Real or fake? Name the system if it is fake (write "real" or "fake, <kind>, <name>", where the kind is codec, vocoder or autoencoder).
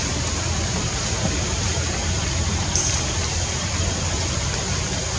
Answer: real